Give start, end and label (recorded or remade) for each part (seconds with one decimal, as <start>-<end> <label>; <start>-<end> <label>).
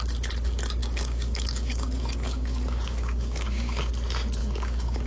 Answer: 0.0-0.8 recorded; 0.8-3.9 remade; 3.9-4.4 recorded; 4.4-5.1 remade